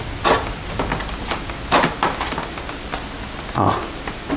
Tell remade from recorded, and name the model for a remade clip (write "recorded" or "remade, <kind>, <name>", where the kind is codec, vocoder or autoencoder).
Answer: recorded